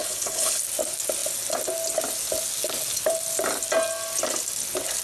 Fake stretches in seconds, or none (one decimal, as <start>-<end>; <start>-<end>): 0.0-0.6